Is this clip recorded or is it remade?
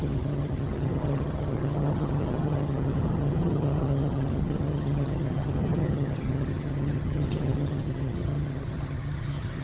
remade